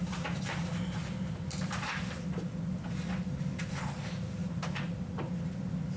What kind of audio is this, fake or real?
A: real